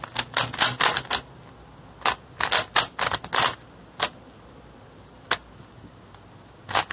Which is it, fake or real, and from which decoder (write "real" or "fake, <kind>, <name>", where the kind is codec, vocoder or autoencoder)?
real